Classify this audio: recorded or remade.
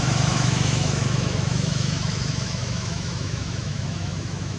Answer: remade